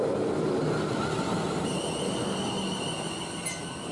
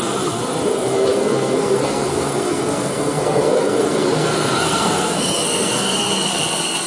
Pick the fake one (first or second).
second